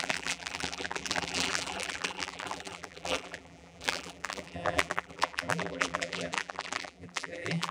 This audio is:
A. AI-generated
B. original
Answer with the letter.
A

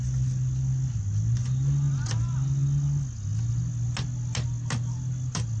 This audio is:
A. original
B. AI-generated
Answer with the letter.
A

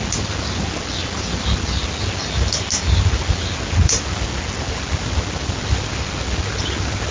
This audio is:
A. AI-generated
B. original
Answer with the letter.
B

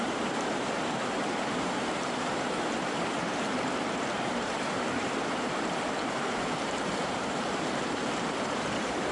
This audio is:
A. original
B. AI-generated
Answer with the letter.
B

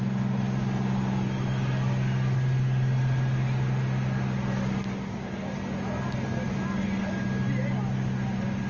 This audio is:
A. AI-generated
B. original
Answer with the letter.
B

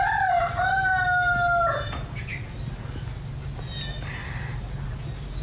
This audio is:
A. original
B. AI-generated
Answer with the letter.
A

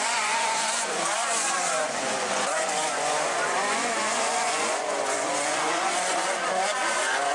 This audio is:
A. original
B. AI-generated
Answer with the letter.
B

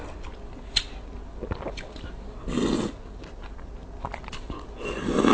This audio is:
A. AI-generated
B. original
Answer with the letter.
B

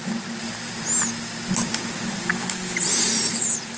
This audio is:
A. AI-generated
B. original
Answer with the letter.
B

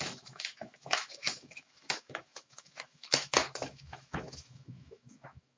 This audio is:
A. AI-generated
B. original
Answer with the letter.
A